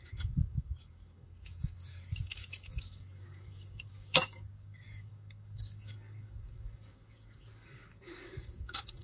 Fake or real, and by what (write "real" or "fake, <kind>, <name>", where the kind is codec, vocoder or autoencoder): fake, codec, DAC